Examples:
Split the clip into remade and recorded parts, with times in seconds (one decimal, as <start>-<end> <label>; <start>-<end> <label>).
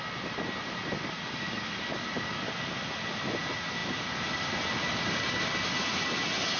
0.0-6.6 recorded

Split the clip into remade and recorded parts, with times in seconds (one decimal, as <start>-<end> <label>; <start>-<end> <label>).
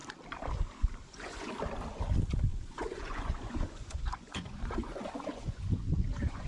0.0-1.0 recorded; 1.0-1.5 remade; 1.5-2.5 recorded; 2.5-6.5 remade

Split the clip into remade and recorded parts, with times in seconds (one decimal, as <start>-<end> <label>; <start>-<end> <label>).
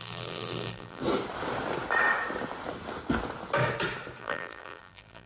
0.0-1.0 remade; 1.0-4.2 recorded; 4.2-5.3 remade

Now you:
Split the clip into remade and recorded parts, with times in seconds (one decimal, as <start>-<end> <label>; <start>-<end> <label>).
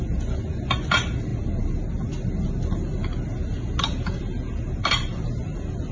0.0-5.9 recorded